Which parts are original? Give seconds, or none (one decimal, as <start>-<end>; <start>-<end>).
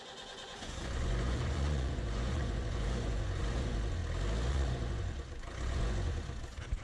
4.0-4.5